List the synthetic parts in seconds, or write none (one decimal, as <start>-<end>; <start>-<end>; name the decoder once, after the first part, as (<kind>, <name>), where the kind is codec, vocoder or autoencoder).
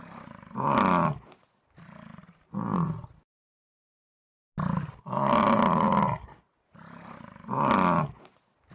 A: none